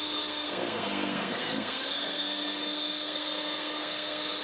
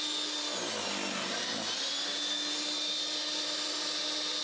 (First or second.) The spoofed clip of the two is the first